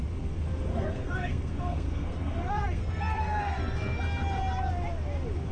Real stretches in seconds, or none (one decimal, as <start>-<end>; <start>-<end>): 0.0-0.7; 4.0-5.5